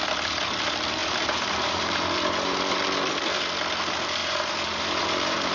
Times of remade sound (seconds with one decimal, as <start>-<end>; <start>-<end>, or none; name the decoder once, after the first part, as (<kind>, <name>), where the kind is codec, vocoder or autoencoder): 1.0-2.6 (vocoder, BigVGAN v2); 4.2-5.5